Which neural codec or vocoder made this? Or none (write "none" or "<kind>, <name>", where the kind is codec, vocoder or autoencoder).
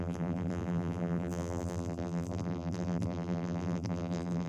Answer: vocoder, BigVGAN v2